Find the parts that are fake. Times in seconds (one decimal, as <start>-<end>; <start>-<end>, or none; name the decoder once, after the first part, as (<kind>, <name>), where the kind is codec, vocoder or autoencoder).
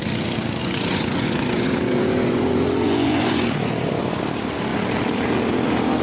0.6-4.2 (vocoder, Vocos)